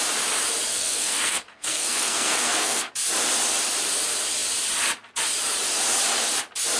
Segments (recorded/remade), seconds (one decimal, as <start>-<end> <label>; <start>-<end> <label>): 0.0-0.7 recorded; 0.7-2.9 remade; 2.9-6.8 recorded

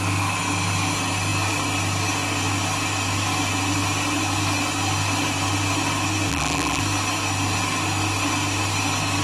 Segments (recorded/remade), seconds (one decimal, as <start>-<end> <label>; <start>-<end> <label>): 0.0-6.3 recorded; 6.3-6.8 remade; 6.8-9.2 recorded

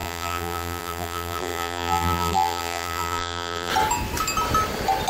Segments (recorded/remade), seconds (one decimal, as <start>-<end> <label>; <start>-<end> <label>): 0.0-3.7 remade; 3.7-5.1 recorded

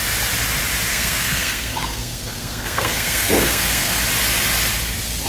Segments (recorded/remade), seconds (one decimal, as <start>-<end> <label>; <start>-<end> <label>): 0.0-0.9 recorded; 0.9-4.0 remade; 4.0-5.3 recorded